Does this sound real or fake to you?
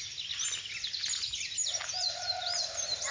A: real